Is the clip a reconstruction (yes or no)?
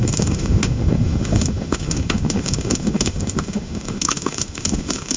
yes